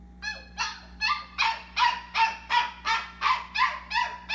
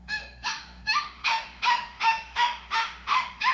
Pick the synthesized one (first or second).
second